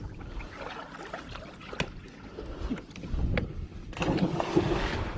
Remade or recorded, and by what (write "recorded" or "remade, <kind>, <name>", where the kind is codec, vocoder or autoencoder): remade, vocoder, BigVGAN v2